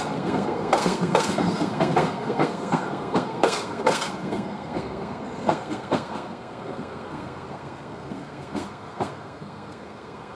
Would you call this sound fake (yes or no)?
yes